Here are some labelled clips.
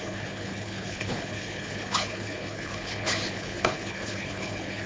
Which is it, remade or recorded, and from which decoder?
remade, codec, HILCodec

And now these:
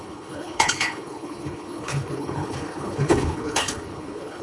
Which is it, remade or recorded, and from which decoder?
remade, codec, HILCodec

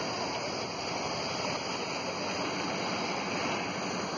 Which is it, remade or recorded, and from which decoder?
recorded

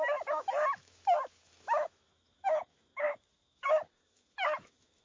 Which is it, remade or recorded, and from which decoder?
remade, autoencoder, DAC-VAE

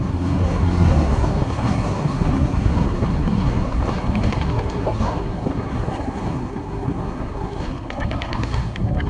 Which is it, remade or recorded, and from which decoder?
remade, codec, SNAC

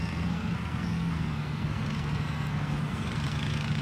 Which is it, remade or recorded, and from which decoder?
remade, codec, SNAC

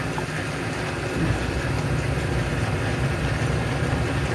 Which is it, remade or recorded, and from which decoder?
recorded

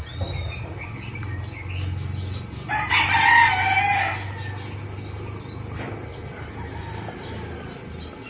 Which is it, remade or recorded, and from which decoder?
recorded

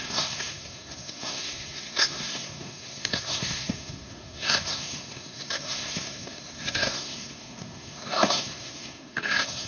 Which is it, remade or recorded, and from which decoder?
remade, codec, SNAC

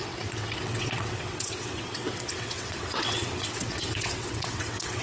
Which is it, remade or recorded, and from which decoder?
remade, vocoder, WaveNeXt